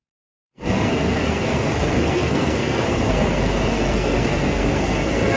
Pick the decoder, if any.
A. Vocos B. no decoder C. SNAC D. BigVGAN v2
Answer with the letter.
C